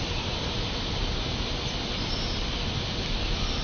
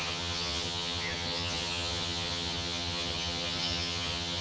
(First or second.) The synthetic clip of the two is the second